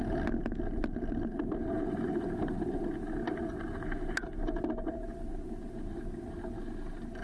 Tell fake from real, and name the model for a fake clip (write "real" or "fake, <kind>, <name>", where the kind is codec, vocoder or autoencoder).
real